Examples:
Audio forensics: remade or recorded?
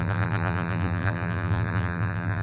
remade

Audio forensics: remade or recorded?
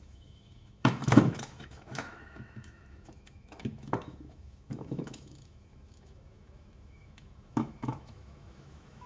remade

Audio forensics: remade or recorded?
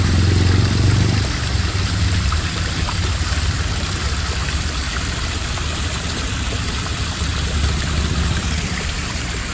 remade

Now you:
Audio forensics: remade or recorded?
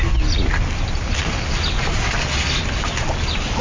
recorded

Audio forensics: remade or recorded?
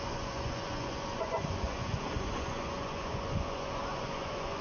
remade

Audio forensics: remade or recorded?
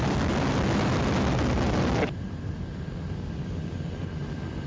recorded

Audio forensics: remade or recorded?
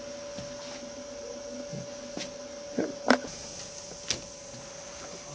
recorded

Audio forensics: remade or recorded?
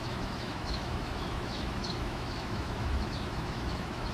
remade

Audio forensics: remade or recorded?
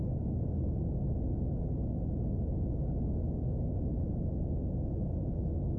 recorded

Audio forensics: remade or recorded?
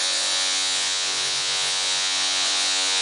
remade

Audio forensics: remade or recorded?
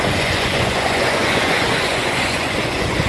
remade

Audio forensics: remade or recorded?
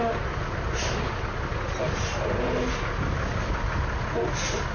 recorded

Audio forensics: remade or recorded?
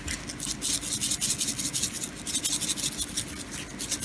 recorded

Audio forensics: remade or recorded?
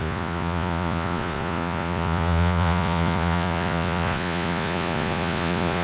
remade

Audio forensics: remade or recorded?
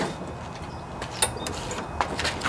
recorded